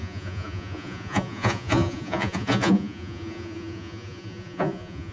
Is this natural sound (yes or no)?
no